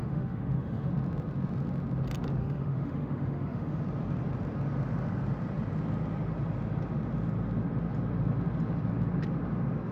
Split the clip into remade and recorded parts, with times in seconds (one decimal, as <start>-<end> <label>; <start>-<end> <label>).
0.0-0.9 remade; 0.9-2.4 recorded; 2.4-3.8 remade; 3.8-9.9 recorded